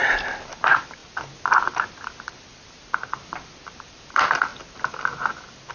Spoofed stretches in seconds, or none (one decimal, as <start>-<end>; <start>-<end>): 0.6-1.0; 3.0-4.5; 5.0-5.7